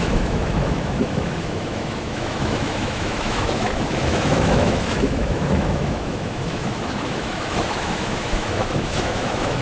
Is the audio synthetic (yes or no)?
yes